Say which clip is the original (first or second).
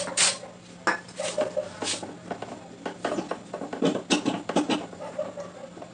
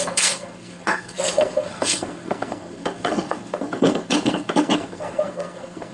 first